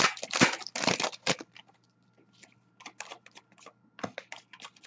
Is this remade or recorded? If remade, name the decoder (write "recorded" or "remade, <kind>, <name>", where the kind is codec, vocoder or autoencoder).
recorded